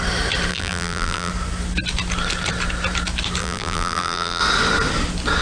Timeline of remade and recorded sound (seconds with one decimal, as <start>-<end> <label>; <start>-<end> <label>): 0.0-0.5 recorded; 0.5-1.3 remade; 1.3-3.4 recorded; 3.4-4.4 remade; 4.4-5.4 recorded